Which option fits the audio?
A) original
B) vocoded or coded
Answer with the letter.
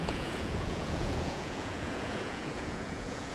B